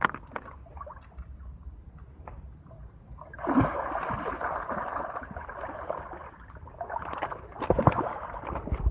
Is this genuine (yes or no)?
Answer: yes